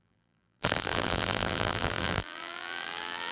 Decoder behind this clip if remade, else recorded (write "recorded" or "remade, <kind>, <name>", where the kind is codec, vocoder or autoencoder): remade, vocoder, BigVGAN v2